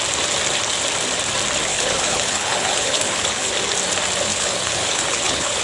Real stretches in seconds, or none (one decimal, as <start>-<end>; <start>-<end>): 0.0-1.7; 3.5-4.3